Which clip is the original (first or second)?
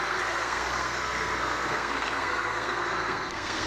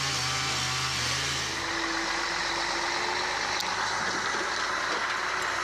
second